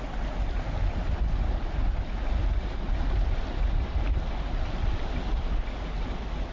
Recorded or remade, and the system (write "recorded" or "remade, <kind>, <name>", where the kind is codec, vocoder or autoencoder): recorded